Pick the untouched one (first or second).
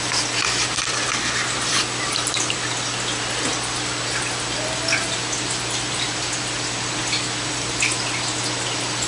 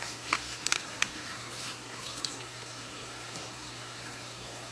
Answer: first